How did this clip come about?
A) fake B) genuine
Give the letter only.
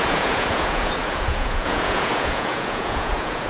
A